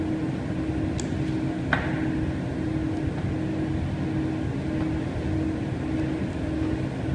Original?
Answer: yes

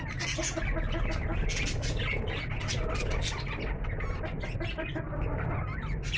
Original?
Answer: yes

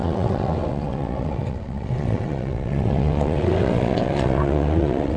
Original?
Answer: no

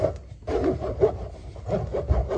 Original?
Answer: yes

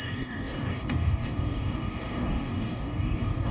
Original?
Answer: no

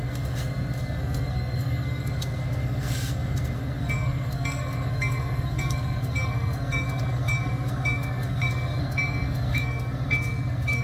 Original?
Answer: no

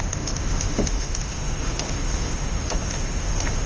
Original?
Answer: no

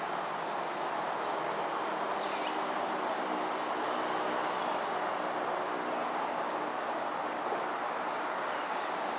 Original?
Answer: yes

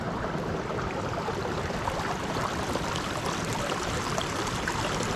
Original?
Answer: no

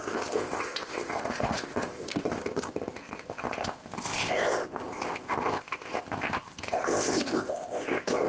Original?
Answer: no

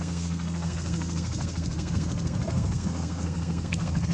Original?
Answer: no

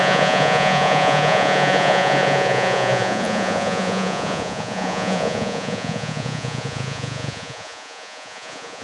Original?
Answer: no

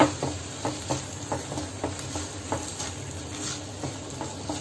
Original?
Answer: yes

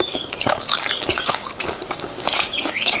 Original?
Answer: no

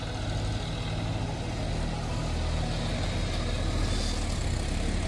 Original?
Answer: yes